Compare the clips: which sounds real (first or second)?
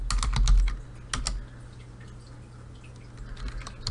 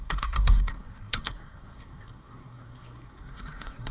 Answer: first